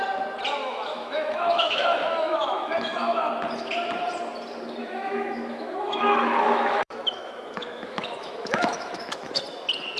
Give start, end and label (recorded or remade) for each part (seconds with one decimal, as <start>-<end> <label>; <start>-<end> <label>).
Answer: 0.0-0.6 recorded; 0.6-3.3 remade; 3.3-4.8 recorded; 4.8-9.4 remade; 9.4-10.0 recorded